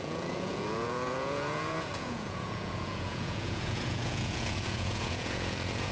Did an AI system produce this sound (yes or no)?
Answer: yes